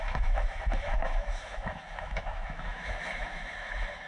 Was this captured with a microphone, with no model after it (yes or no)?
no